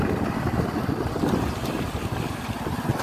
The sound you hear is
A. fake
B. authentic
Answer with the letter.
B